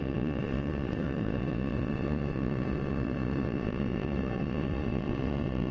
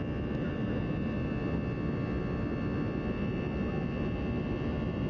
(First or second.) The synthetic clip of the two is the first